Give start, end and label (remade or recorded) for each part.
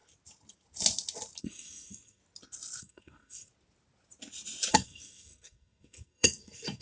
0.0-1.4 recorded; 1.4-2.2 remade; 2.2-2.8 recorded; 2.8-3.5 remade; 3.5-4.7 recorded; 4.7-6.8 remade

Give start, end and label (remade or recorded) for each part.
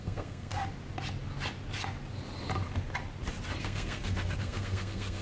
0.0-0.5 remade; 0.5-3.6 recorded; 3.6-5.2 remade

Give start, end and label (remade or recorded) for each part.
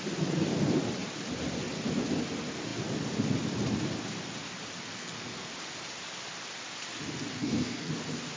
0.0-4.9 recorded; 4.9-5.5 remade; 5.5-7.3 recorded; 7.3-7.9 remade; 7.9-8.4 recorded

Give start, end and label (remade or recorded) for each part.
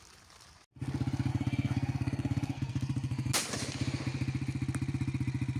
0.0-1.3 recorded; 1.3-3.3 remade; 3.3-5.6 recorded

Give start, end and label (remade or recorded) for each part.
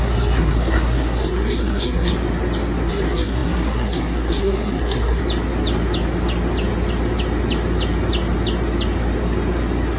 0.0-2.1 remade; 2.1-2.9 recorded; 2.9-5.2 remade; 5.2-10.0 recorded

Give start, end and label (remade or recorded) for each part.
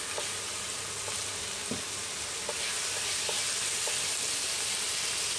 0.0-5.4 recorded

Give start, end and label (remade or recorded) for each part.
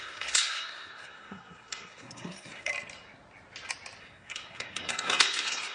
0.0-2.7 remade; 2.7-4.0 recorded; 4.0-5.7 remade